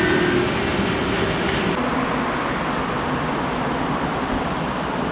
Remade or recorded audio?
recorded